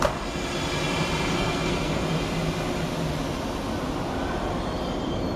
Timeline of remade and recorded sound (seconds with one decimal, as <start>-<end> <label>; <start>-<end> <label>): 0.0-1.3 recorded; 1.3-2.0 remade; 2.0-5.4 recorded